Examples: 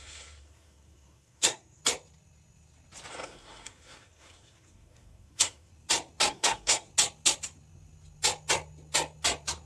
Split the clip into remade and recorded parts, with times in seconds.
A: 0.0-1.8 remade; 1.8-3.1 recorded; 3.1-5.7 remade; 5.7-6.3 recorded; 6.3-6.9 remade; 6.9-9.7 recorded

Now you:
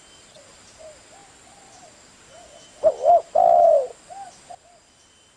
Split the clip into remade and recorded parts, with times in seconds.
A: 0.0-5.4 recorded

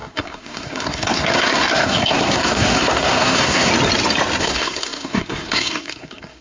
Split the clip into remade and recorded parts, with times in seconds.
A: 0.0-3.7 remade; 3.7-4.4 recorded; 4.4-6.4 remade

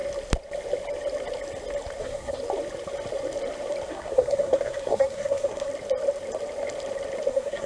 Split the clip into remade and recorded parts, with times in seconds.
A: 0.0-2.0 recorded; 2.0-2.4 remade; 2.4-3.9 recorded; 3.9-5.7 remade; 5.7-7.3 recorded; 7.3-7.7 remade

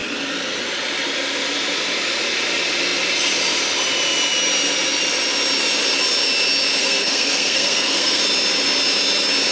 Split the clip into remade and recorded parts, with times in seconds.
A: 0.0-6.8 recorded; 6.8-8.2 remade; 8.2-9.5 recorded